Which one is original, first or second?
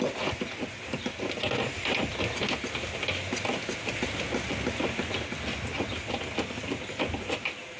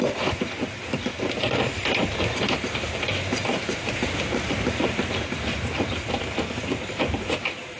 first